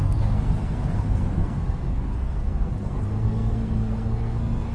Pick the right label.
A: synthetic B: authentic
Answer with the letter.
A